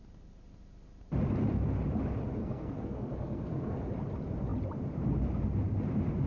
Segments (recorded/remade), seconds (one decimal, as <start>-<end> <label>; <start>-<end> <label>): 0.0-2.4 recorded; 2.4-3.9 remade; 3.9-6.3 recorded